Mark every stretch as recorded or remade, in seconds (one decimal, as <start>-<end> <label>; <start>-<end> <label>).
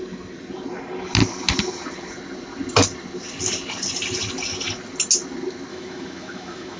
0.0-5.7 recorded; 5.7-6.8 remade